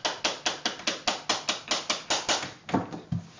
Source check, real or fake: real